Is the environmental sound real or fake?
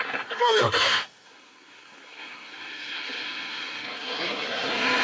fake